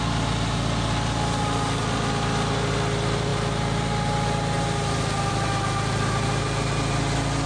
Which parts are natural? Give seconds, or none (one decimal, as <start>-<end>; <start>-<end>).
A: 0.0-7.5